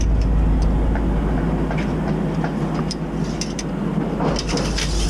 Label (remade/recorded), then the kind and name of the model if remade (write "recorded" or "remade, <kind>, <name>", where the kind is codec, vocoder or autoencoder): recorded